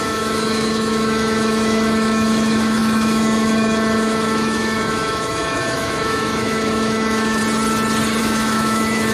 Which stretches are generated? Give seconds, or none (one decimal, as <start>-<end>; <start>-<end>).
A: 0.0-7.4; 8.2-9.1